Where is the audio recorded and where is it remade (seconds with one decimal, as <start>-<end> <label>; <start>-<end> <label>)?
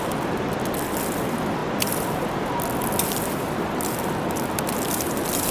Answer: 0.0-5.5 recorded